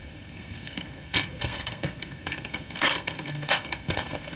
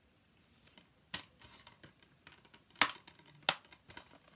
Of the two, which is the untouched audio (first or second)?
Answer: second